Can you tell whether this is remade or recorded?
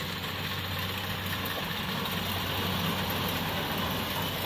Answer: recorded